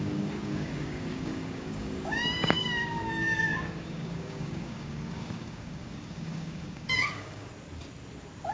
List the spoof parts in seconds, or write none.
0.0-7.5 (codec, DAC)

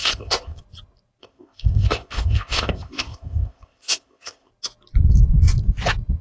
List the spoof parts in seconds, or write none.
0.0-0.6 (codec, ZipCodec); 1.2-4.5